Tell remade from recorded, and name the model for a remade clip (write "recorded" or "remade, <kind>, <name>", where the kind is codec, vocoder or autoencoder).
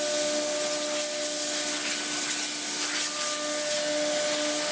recorded